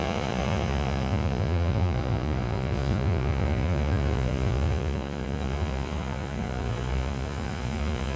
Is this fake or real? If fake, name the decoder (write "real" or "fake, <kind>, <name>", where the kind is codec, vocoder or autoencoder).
fake, vocoder, Vocos